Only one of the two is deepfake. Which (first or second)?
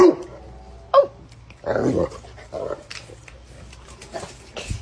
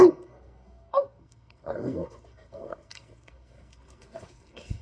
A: second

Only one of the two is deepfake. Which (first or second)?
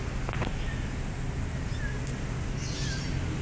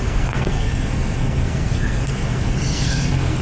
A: second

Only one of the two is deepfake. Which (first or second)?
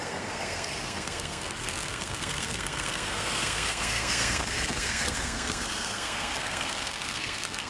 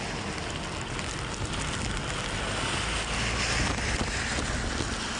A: first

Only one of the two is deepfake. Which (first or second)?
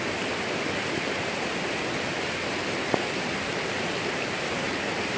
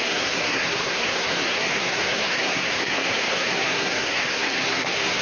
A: second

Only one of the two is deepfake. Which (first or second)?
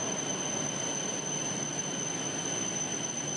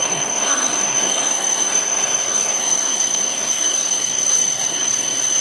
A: second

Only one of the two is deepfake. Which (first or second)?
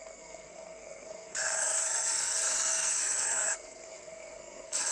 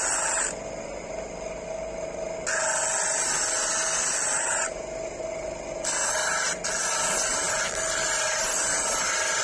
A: first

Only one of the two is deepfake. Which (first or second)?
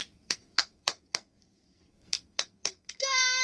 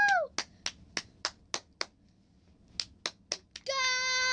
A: first